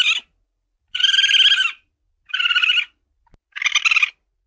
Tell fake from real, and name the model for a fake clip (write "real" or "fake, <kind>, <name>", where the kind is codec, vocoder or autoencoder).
real